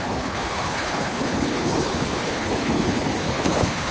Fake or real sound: fake